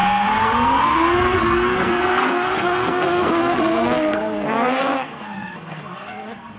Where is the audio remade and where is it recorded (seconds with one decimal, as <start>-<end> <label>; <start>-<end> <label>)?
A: 0.0-6.6 remade